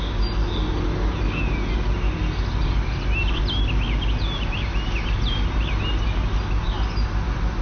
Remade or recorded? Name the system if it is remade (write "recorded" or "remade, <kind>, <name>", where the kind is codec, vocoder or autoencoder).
recorded